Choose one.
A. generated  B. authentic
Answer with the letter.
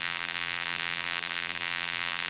A